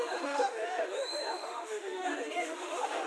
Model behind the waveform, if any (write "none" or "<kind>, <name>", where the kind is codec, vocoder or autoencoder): autoencoder, DAC-VAE